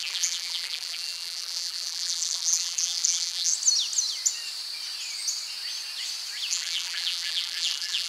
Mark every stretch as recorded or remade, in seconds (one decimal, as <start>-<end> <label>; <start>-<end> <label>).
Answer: 0.0-3.5 remade; 3.5-6.5 recorded; 6.5-8.1 remade